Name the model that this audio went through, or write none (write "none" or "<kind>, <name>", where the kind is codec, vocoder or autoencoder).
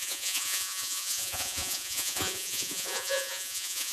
vocoder, Vocos